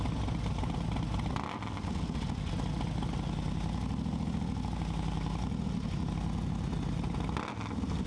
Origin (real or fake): real